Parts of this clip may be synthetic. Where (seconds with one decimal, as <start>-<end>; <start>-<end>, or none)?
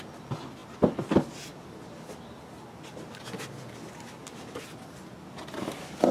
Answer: none